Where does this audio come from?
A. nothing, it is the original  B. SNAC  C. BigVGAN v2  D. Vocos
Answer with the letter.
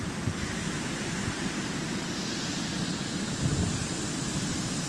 A